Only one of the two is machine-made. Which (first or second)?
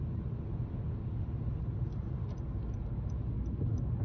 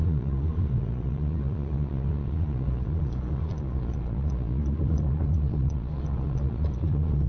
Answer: second